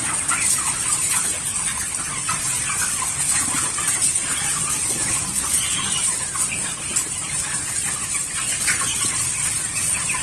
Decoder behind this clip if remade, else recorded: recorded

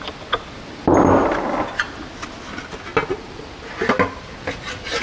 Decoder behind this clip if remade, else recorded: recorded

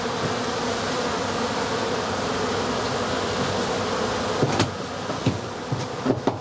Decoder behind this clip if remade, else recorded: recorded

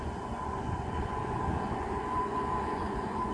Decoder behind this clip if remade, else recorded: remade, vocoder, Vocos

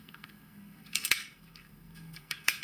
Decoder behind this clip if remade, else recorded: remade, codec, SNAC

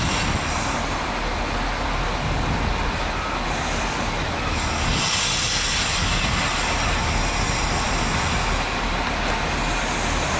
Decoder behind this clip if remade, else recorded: recorded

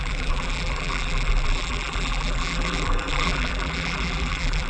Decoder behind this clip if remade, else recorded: remade, vocoder, BigVGAN v2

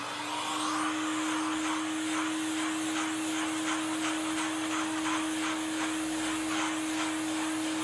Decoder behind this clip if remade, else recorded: recorded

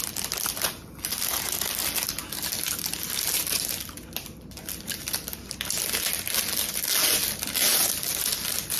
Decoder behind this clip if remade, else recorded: recorded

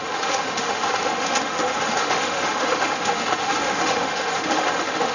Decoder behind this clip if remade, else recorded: remade, autoencoder, DAC-VAE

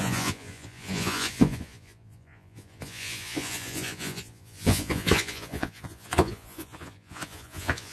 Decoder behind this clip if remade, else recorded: remade, vocoder, Vocos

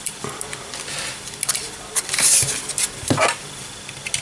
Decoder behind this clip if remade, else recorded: recorded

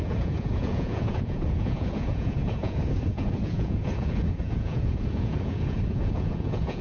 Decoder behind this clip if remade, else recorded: remade, vocoder, Vocos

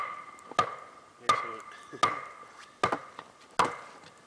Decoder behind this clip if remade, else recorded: recorded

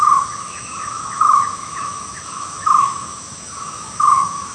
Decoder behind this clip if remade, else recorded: remade, autoencoder, DAC-VAE